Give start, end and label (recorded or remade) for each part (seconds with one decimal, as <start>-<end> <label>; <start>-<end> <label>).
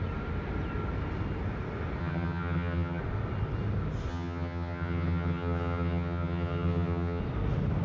0.0-2.0 recorded; 2.0-3.0 remade; 3.0-4.1 recorded; 4.1-7.2 remade; 7.2-7.8 recorded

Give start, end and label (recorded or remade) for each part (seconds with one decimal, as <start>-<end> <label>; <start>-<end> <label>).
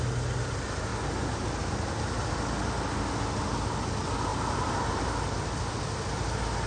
0.0-0.9 recorded; 0.9-1.7 remade; 1.7-4.3 recorded; 4.3-5.1 remade; 5.1-6.7 recorded